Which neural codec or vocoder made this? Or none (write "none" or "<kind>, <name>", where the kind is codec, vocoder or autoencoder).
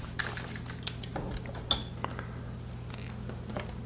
none